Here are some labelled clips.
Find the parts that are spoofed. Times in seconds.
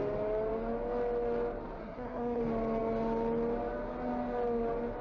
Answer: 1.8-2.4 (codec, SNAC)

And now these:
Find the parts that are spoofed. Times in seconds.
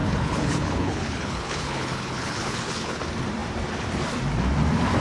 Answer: 0.0-3.0 (codec, HILCodec)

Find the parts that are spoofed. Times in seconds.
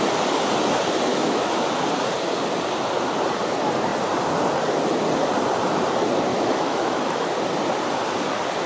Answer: 1.1-1.6 (autoencoder, DAC-VAE); 6.3-7.3